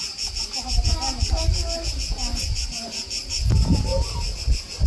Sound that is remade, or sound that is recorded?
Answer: recorded